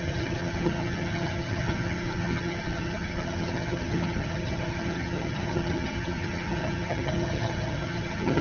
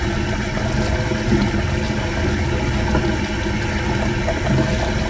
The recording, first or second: second